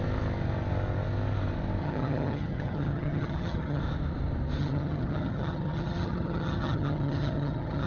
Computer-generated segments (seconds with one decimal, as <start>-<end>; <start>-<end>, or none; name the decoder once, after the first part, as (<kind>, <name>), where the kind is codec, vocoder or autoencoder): 1.8-3.8 (vocoder, HiFi-GAN); 4.6-7.9